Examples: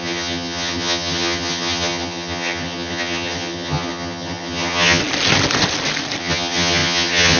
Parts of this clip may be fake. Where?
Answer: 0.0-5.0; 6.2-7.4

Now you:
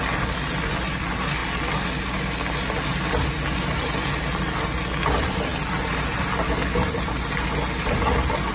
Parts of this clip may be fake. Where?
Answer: none

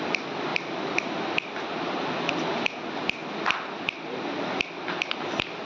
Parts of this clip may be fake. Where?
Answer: none

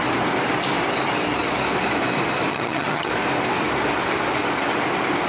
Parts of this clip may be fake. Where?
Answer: 2.5-3.1

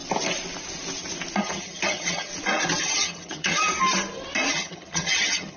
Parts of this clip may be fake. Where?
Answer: 1.4-2.3; 2.8-3.6; 4.5-5.6

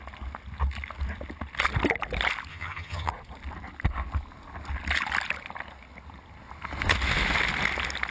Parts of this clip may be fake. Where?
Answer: 2.5-3.1